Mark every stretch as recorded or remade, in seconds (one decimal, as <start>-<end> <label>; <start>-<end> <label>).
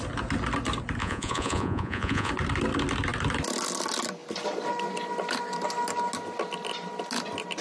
0.0-1.0 recorded; 1.0-2.3 remade; 2.3-7.6 recorded